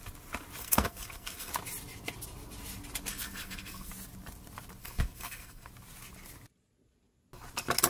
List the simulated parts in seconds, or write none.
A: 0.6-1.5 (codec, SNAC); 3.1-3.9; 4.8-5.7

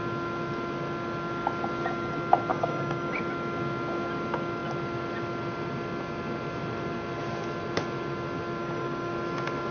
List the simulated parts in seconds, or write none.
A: 2.5-3.2 (codec, DAC); 8.6-9.1